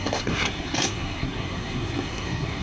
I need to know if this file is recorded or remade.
remade